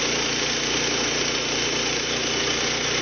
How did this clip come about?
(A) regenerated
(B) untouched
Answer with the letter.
B